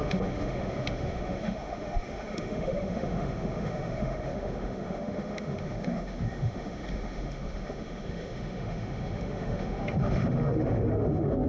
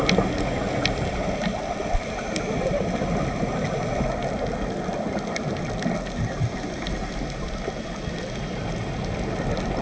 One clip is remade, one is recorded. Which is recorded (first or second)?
second